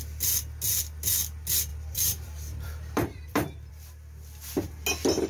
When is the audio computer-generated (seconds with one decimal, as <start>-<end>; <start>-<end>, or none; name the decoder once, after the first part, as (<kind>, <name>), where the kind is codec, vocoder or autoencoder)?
1.7-3.7 (vocoder, BigVGAN v2)